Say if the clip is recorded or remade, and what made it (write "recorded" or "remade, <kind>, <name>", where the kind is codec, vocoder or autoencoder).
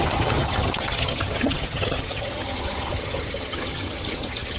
remade, vocoder, HiFi-GAN